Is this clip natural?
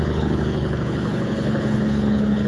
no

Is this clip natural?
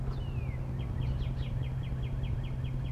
yes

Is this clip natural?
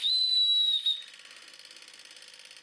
yes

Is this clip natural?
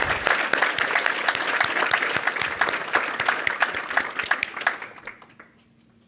yes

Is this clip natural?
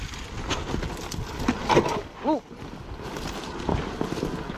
yes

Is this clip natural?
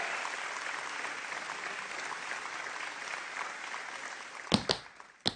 yes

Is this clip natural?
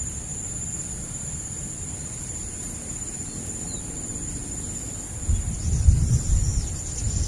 yes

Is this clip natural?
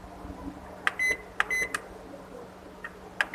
yes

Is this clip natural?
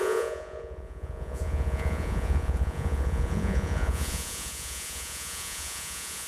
no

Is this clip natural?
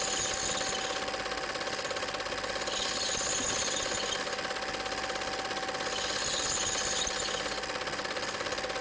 yes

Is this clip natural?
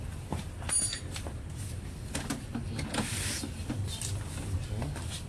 yes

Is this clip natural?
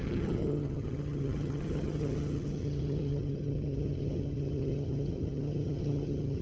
no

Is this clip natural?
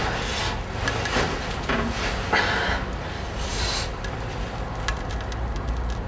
yes